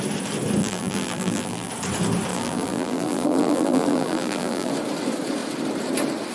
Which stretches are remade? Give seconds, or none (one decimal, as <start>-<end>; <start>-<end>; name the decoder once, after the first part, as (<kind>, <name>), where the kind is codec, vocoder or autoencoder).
0.6-1.7 (vocoder, BigVGAN v2); 2.3-4.7